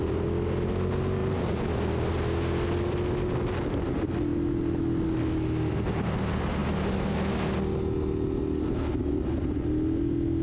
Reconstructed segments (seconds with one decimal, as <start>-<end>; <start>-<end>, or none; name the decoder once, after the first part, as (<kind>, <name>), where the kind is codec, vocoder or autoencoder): none